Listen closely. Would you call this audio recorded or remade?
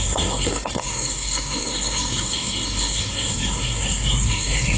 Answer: remade